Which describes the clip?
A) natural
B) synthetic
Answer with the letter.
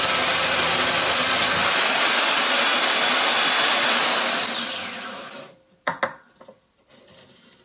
A